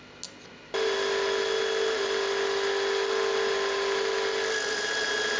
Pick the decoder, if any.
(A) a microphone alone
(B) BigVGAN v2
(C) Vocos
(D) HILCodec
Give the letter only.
A